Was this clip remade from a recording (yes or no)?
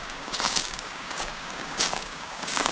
yes